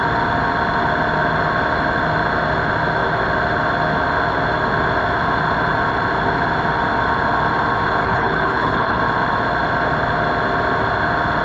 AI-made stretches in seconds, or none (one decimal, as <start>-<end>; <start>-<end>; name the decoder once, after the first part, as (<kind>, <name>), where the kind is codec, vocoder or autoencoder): 8.0-9.0 (codec, HILCodec)

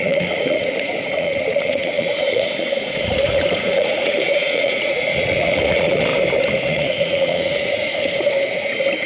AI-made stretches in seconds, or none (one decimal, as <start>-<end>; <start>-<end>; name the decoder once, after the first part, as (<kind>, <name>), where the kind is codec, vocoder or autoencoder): 0.0-6.1 (vocoder, Vocos); 6.7-7.9

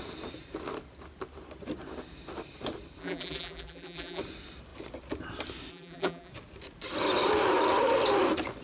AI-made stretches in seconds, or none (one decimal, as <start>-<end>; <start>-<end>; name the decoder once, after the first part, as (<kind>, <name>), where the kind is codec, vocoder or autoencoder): 3.0-4.2 (vocoder, BigVGAN v2); 5.7-6.3

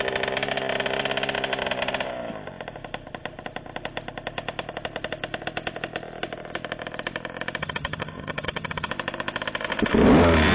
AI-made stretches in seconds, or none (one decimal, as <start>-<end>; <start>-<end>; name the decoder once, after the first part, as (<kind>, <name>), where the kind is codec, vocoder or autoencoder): 7.6-8.9 (vocoder, HiFi-GAN)

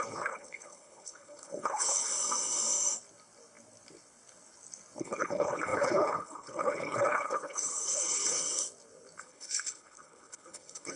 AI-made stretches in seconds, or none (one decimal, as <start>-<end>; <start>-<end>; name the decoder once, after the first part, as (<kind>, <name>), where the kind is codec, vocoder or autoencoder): 0.0-2.1 (codec, HILCodec); 5.0-8.4; 9.2-11.0

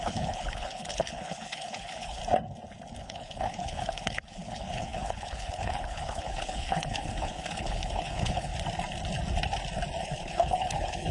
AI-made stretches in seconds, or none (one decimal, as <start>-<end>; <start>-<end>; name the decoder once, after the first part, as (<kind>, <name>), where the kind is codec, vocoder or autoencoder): 0.0-2.2 (codec, HILCodec); 3.0-8.5; 10.0-11.1

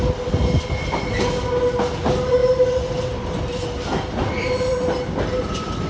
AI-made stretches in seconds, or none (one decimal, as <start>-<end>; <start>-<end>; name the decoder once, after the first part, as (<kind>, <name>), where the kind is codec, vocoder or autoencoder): none

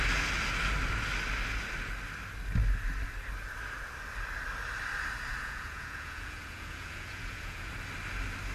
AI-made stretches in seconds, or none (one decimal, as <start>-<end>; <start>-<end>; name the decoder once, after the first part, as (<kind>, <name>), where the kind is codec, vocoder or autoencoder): 5.3-7.7 (vocoder, Vocos)